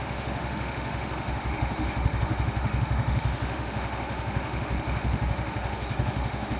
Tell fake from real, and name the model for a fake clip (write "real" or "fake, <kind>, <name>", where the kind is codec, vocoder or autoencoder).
fake, autoencoder, DAC-VAE